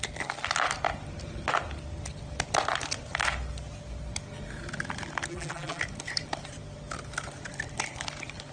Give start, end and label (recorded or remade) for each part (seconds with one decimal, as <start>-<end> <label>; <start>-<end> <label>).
0.0-5.3 recorded; 5.3-5.8 remade; 5.8-8.5 recorded